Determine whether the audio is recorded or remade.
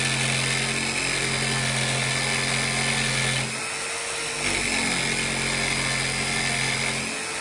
recorded